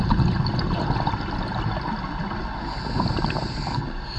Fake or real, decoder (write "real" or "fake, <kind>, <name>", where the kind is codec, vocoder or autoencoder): real